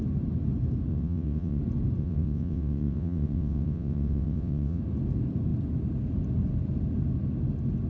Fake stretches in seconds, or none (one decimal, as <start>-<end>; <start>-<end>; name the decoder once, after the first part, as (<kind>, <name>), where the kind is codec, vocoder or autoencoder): 0.9-1.6 (vocoder, WaveNeXt); 2.0-4.8